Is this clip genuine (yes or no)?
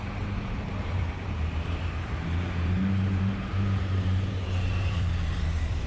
no